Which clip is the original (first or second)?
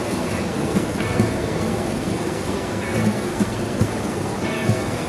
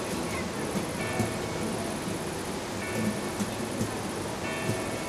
second